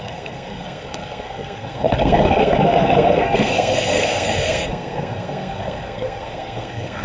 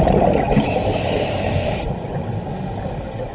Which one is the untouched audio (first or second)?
second